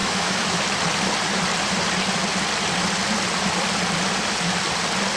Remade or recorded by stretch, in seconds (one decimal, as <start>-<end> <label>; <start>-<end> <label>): 0.0-0.6 remade; 0.6-5.2 recorded